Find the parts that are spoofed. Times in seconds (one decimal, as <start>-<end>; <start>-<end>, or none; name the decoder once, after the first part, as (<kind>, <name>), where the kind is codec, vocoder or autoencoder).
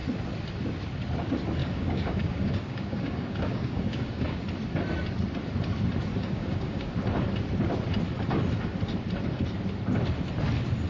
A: 1.6-4.4 (codec, DAC); 6.1-6.9